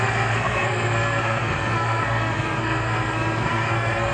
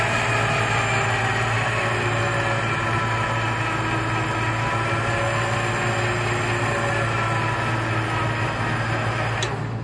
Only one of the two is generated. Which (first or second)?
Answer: first